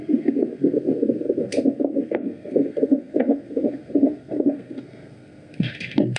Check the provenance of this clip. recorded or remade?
remade